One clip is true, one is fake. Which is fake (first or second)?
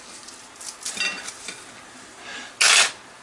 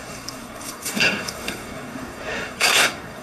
second